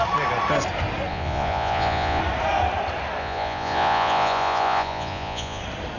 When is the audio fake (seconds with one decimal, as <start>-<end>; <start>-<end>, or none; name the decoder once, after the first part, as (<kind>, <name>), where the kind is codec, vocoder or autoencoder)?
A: 1.1-2.2 (vocoder, Vocos); 3.2-5.6